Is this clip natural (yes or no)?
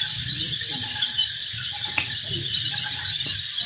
yes